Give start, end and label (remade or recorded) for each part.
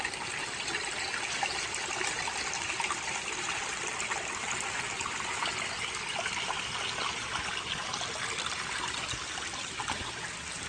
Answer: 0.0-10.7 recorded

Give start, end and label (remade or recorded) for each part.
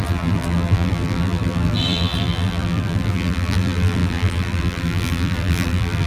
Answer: 0.0-6.1 remade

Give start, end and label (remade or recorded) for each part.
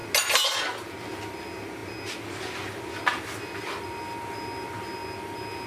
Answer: 0.0-5.7 recorded